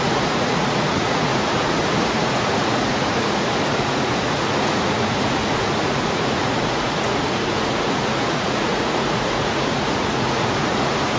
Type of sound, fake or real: fake